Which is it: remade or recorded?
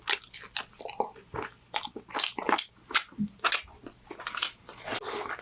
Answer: recorded